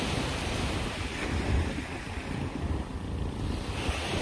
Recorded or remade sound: recorded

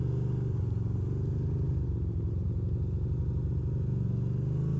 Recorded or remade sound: recorded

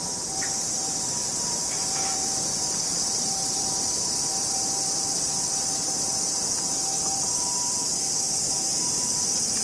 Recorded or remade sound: remade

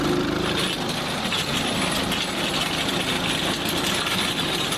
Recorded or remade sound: recorded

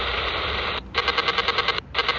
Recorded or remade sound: remade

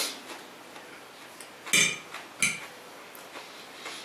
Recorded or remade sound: recorded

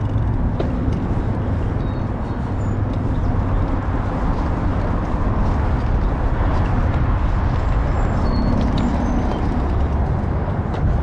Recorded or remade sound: recorded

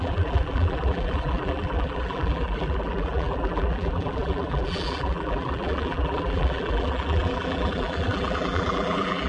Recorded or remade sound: remade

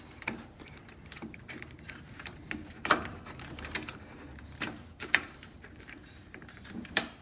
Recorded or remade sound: remade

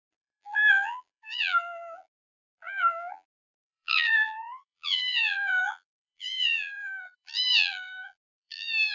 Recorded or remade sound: remade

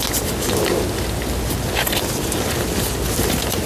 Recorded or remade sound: recorded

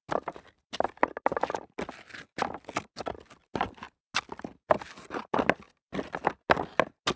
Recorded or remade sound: recorded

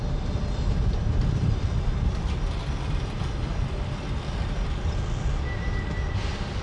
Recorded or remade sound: recorded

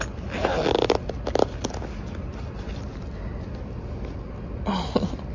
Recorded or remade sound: recorded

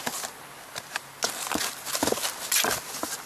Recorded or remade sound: recorded